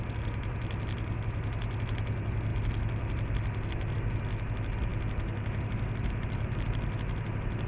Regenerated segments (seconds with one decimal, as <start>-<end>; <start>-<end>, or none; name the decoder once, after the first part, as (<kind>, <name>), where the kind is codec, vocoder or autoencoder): none